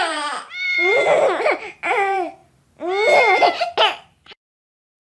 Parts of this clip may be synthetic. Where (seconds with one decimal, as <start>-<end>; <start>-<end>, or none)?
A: 0.0-0.9; 1.9-2.4; 3.8-5.0